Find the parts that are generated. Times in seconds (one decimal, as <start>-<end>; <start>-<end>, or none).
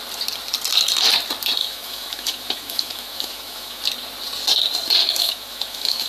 1.6-3.8; 5.0-6.1